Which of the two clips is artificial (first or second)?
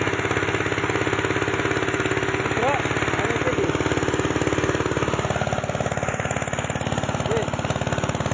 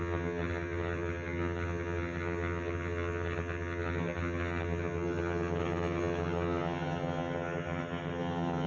second